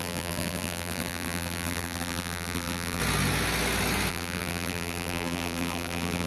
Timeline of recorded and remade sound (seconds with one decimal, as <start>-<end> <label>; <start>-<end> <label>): 0.0-3.0 remade; 3.0-4.1 recorded; 4.1-6.3 remade